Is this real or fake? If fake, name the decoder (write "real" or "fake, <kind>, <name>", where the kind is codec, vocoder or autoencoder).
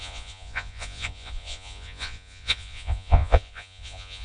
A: fake, vocoder, Vocos